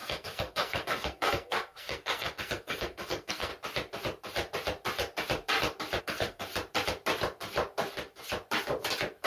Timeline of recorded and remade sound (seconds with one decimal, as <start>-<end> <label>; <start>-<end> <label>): 0.0-3.5 remade; 3.5-6.0 recorded; 6.0-6.5 remade; 6.5-9.3 recorded